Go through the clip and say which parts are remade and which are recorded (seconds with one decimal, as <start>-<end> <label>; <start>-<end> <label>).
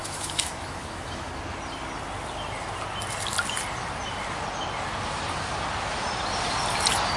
0.0-1.3 remade; 1.3-7.2 recorded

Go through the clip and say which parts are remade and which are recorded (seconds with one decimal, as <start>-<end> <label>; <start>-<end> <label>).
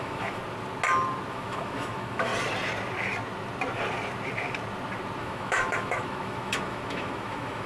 0.0-0.4 remade; 0.4-1.3 recorded; 1.3-2.3 remade; 2.3-5.2 recorded; 5.2-7.7 remade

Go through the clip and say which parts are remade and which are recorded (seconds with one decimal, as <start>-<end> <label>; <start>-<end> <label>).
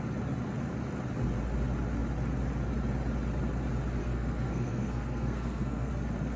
0.0-4.0 recorded; 4.0-5.9 remade; 5.9-6.4 recorded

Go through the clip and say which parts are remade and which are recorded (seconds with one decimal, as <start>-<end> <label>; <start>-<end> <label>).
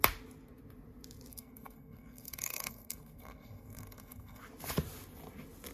0.0-1.3 recorded; 1.3-4.4 remade; 4.4-5.7 recorded